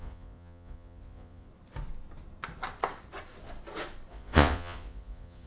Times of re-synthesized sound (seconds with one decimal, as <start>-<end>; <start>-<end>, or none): 0.0-1.5; 4.1-5.5